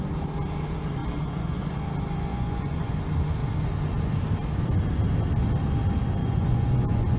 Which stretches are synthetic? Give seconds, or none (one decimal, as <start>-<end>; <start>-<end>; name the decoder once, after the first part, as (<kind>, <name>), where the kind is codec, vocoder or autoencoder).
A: 1.0-1.6 (vocoder, Vocos); 2.3-2.9; 6.2-7.2